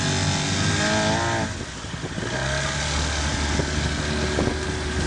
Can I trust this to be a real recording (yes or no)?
yes